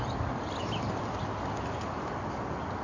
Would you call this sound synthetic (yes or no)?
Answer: no